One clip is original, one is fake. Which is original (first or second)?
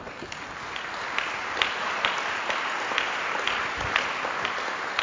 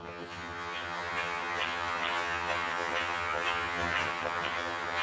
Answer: first